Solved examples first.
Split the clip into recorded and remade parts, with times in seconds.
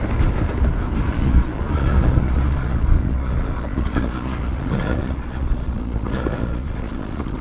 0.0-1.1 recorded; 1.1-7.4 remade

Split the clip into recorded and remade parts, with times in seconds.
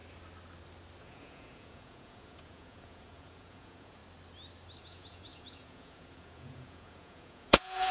0.0-1.0 recorded; 1.0-4.0 remade; 4.0-4.8 recorded; 4.8-7.9 remade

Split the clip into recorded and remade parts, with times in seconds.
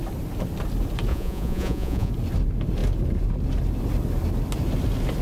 0.0-1.1 recorded; 1.1-2.1 remade; 2.1-5.2 recorded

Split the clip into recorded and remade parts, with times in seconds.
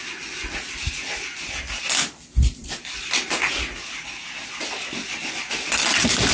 0.0-6.3 recorded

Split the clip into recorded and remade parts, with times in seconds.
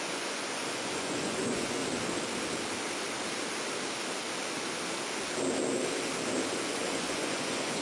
0.0-1.8 remade; 1.8-6.5 recorded; 6.5-7.8 remade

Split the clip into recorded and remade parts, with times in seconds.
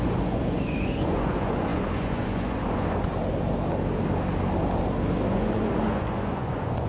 0.0-3.1 remade; 3.1-5.3 recorded; 5.3-6.9 remade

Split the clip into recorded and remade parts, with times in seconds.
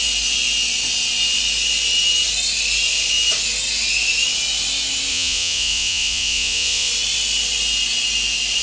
0.0-5.1 recorded; 5.1-6.9 remade; 6.9-8.6 recorded